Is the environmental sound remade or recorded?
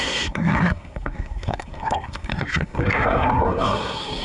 remade